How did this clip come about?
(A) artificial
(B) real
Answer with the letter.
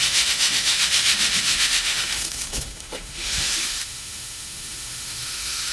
A